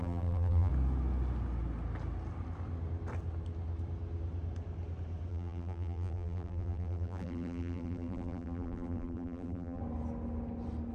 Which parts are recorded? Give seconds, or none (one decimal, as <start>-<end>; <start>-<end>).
0.7-5.3; 9.8-10.9